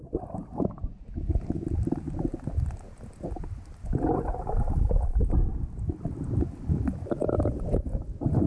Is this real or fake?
real